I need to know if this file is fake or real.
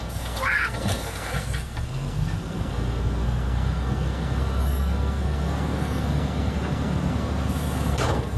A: fake